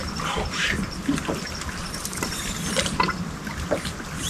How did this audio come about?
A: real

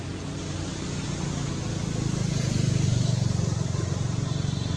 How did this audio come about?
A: real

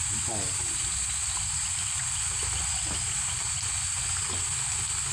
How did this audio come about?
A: real